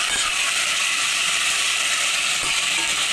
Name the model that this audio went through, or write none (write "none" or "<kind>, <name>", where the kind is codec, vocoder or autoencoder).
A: vocoder, BigVGAN v2